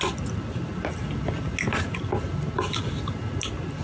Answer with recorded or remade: recorded